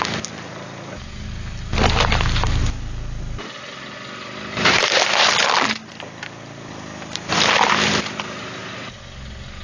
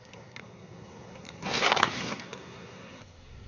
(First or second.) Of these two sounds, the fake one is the second